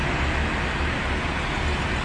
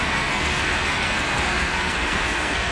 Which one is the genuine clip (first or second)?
first